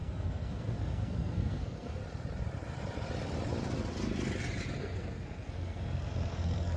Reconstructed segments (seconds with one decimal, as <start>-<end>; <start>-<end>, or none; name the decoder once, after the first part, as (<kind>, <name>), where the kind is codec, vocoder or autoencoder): 0.0-2.0 (codec, SNAC); 4.8-6.8

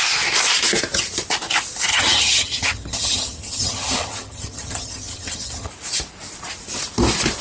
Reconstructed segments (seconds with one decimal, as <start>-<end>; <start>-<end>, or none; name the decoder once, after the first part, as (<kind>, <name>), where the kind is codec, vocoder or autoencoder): 1.9-5.7 (vocoder, HiFi-GAN)

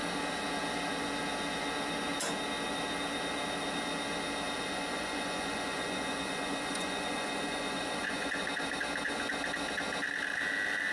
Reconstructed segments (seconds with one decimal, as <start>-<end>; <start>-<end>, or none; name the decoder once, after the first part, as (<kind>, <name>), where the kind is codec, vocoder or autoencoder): 4.7-8.4 (vocoder, Vocos)

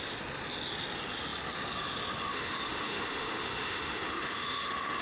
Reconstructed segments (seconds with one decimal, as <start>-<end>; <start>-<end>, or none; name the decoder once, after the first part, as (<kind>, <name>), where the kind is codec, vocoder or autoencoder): 2.3-5.0 (autoencoder, DAC-VAE)